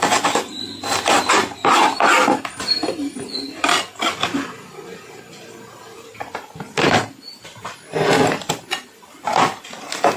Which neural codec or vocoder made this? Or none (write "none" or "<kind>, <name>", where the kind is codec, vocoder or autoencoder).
none